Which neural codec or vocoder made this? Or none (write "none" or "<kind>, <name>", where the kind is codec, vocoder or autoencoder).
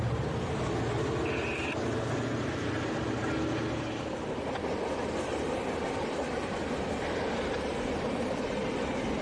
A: none